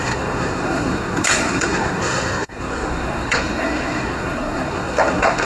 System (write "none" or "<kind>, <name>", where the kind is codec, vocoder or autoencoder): codec, SNAC